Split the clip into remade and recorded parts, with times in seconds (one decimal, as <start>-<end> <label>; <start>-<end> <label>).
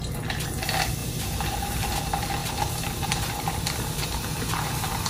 0.0-1.0 recorded; 1.0-2.0 remade; 2.0-2.4 recorded; 2.4-5.1 remade